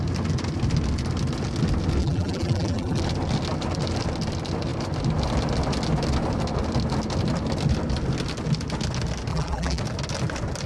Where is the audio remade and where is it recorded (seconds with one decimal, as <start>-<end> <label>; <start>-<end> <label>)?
0.0-2.0 recorded; 2.0-3.0 remade; 3.0-9.3 recorded; 9.3-9.8 remade; 9.8-10.7 recorded